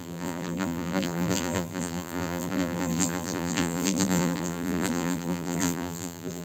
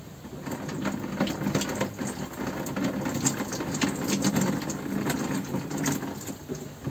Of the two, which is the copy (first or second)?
first